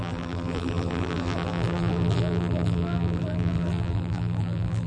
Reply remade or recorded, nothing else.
remade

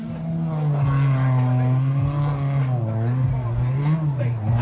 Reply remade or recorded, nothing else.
recorded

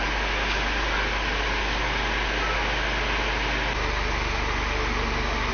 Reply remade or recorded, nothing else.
recorded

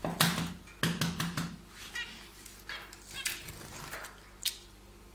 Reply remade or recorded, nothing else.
recorded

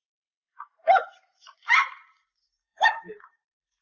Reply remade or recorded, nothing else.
remade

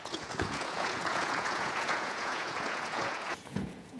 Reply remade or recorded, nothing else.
remade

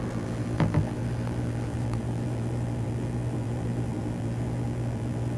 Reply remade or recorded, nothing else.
remade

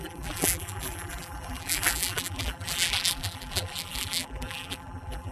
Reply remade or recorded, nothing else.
remade